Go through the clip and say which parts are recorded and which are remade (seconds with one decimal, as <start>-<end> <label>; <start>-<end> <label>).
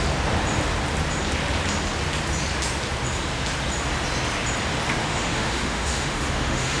0.0-5.0 recorded; 5.0-6.8 remade